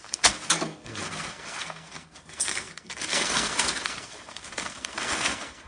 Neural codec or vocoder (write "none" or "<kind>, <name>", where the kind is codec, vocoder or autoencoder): codec, SNAC